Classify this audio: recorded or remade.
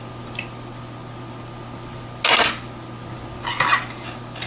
recorded